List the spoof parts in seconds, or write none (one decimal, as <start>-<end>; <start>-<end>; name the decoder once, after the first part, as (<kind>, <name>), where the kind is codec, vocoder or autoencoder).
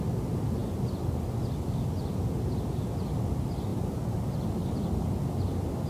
none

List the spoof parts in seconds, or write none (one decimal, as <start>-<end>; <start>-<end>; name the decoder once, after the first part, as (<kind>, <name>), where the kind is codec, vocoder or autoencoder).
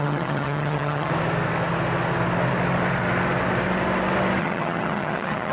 0.0-1.1 (vocoder, HiFi-GAN); 4.4-5.5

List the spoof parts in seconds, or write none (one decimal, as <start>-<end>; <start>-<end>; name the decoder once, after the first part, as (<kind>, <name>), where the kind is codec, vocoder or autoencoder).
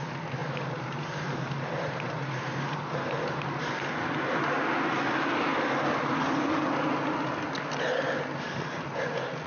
0.4-3.6 (vocoder, BigVGAN v2)